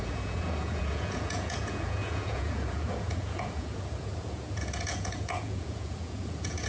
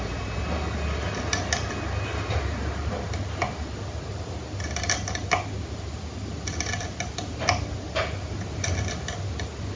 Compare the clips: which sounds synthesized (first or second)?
first